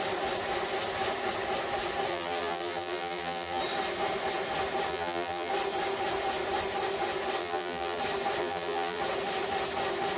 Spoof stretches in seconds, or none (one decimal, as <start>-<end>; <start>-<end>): 2.1-3.6; 4.9-5.5; 7.4-8.0; 8.4-9.0